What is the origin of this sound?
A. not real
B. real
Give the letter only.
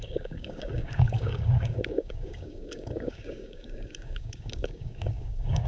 A